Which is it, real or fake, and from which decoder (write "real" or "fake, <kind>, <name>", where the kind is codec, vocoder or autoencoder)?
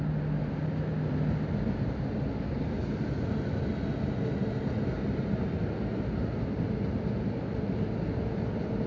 real